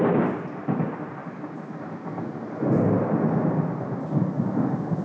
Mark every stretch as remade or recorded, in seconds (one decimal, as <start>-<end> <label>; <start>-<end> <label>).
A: 0.0-5.0 recorded